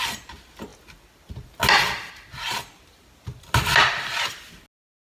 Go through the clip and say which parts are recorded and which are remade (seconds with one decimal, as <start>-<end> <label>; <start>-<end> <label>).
0.0-5.0 recorded